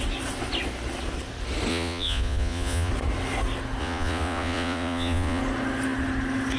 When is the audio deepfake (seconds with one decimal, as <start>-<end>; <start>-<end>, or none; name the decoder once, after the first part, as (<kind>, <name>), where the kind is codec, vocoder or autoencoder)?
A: 1.7-2.9 (vocoder, Vocos); 3.8-5.4